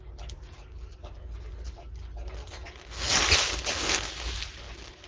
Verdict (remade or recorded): recorded